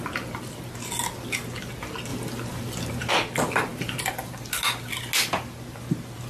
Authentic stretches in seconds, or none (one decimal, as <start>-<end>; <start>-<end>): 0.0-6.3

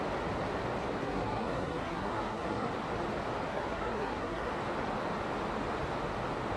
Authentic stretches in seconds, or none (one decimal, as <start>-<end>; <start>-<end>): 0.0-1.0; 2.7-3.5; 4.5-6.6

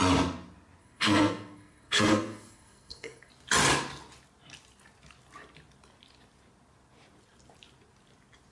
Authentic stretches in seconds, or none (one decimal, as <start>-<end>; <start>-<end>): 0.0-0.8; 3.3-8.5